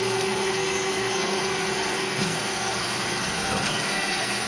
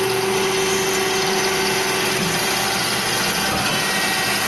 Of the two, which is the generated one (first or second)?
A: first